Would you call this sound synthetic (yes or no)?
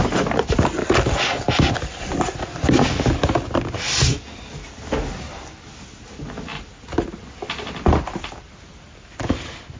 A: no